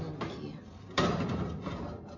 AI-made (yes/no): no